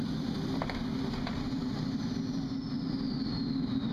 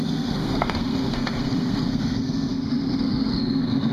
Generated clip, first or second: second